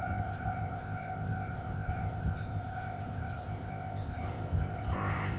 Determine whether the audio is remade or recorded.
remade